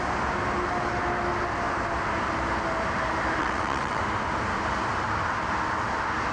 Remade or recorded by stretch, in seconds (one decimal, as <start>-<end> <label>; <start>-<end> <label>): 0.0-3.4 recorded; 3.4-4.0 remade; 4.0-6.3 recorded